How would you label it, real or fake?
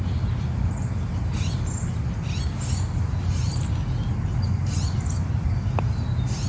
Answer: real